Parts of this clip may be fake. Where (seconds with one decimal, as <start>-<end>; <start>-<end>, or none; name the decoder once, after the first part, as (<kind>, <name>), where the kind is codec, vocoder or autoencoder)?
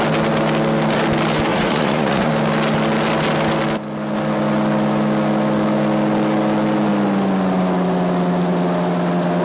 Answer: 1.5-2.3 (vocoder, Vocos)